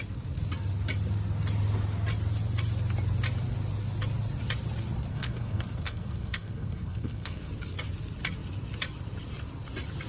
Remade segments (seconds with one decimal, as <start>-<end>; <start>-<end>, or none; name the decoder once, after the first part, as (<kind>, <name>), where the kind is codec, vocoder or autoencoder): 5.1-7.5 (codec, SNAC)